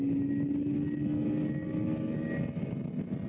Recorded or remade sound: recorded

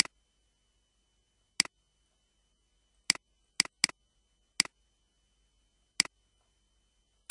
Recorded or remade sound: recorded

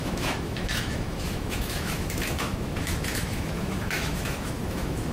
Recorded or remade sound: remade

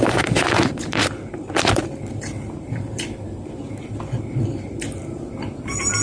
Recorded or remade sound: remade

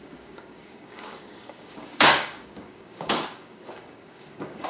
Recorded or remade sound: remade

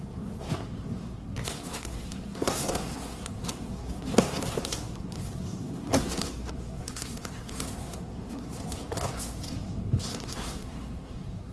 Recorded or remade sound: remade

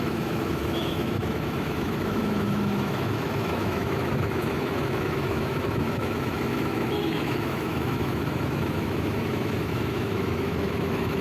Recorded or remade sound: remade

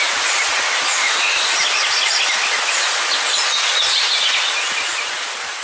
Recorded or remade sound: recorded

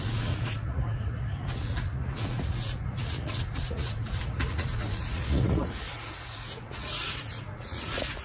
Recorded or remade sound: remade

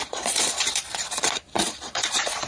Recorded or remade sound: remade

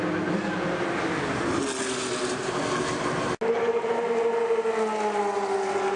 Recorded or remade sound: recorded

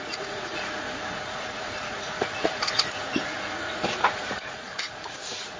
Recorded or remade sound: remade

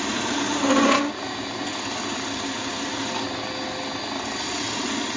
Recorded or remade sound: recorded